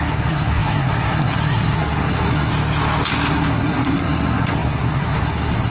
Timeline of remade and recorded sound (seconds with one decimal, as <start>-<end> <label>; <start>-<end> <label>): 0.0-2.5 remade; 2.5-3.3 recorded; 3.3-5.7 remade